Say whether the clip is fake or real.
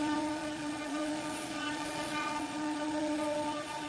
fake